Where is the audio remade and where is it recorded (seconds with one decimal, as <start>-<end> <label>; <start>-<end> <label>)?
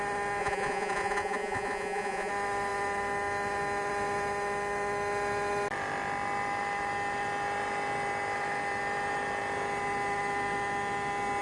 0.0-0.4 recorded; 0.4-2.3 remade; 2.3-11.4 recorded